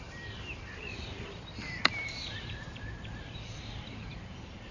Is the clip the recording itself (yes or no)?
no